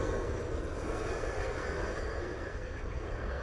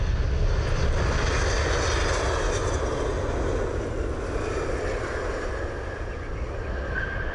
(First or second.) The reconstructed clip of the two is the first